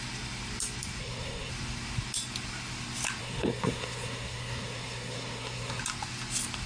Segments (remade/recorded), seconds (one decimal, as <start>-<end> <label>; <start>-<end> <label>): 0.0-1.0 recorded; 1.0-1.5 remade; 1.5-3.2 recorded; 3.2-5.8 remade; 5.8-6.7 recorded